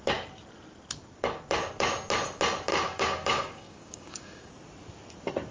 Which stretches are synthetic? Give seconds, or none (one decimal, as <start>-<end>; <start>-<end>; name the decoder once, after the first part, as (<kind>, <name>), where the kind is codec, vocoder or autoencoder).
2.7-4.5 (codec, DAC)